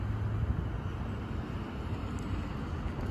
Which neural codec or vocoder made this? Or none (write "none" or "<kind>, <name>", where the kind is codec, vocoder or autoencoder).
none